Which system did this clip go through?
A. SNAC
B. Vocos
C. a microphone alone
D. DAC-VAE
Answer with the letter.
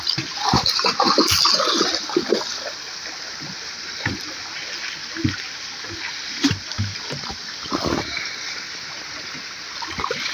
C